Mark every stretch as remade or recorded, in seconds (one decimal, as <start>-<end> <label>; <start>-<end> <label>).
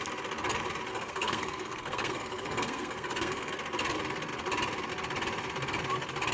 0.0-0.9 recorded; 0.9-3.5 remade; 3.5-6.3 recorded